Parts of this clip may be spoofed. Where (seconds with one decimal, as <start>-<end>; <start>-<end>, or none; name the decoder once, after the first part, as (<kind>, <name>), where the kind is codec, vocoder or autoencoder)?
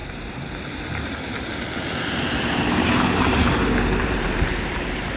0.0-1.5 (vocoder, BigVGAN v2); 4.0-5.2